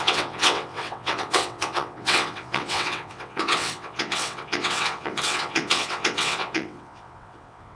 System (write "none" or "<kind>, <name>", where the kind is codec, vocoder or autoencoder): vocoder, WaveNeXt